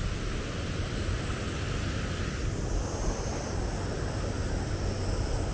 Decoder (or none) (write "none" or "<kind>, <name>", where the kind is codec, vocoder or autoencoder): none